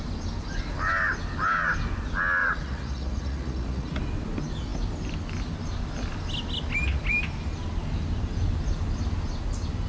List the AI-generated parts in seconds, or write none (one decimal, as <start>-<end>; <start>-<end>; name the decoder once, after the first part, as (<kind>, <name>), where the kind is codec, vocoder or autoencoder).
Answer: 2.4-4.0 (vocoder, Vocos)